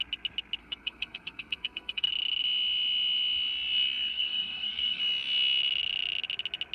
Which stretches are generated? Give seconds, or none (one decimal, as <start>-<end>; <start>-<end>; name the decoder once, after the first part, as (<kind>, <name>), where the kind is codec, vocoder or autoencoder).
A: 0.6-2.1 (codec, SNAC); 4.1-5.0